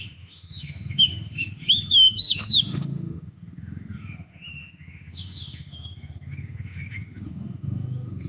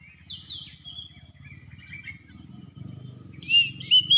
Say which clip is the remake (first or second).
first